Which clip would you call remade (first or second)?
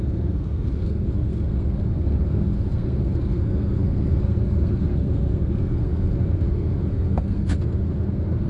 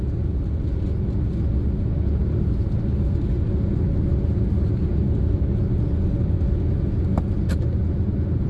first